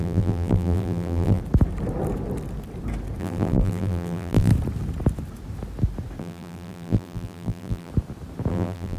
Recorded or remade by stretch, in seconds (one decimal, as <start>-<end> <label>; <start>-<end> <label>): 0.0-1.4 remade; 1.4-3.2 recorded; 3.2-4.5 remade; 4.5-6.2 recorded; 6.2-7.9 remade; 7.9-8.5 recorded; 8.5-9.0 remade